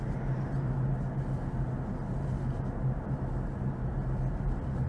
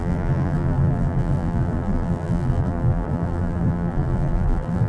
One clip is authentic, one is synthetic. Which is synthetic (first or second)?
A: second